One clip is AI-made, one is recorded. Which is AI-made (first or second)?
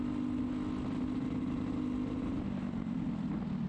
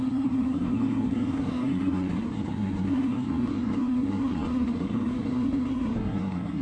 second